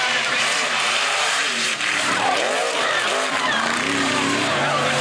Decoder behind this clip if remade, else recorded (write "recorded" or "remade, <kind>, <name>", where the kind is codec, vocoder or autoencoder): remade, vocoder, BigVGAN v2